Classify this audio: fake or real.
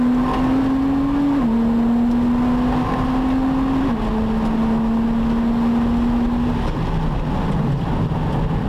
real